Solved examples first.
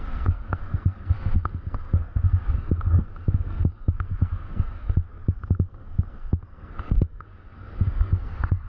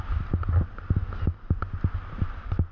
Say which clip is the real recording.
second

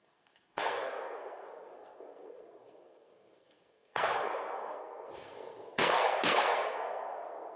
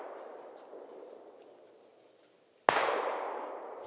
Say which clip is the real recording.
second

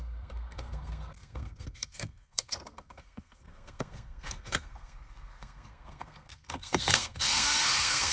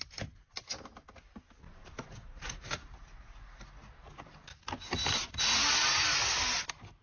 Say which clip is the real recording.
second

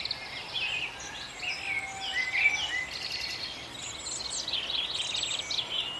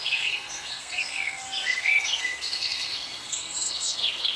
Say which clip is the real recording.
first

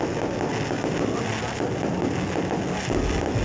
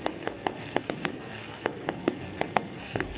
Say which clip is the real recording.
first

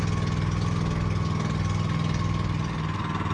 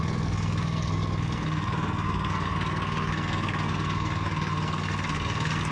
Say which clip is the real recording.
first